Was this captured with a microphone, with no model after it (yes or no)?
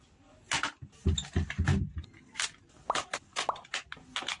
yes